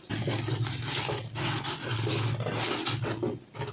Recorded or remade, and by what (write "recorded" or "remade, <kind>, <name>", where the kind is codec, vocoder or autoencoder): recorded